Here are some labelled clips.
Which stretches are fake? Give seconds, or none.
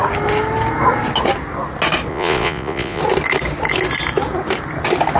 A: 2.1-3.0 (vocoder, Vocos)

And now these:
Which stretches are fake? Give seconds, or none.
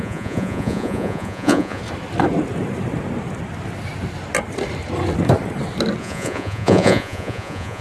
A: 0.0-1.8 (vocoder, Vocos); 6.0-7.8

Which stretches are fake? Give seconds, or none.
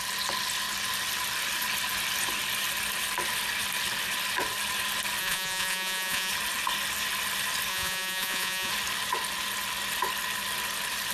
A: 5.2-6.3 (vocoder, Vocos); 7.7-8.7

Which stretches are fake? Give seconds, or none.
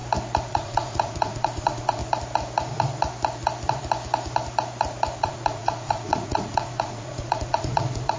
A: 0.5-2.0 (vocoder, Vocos); 5.2-8.2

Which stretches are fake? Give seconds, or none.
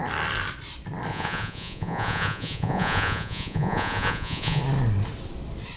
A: 1.1-4.6 (vocoder, Vocos)